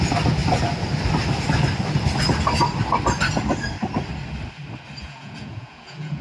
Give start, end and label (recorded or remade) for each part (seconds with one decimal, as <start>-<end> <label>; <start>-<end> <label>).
0.0-5.0 recorded; 5.0-6.2 remade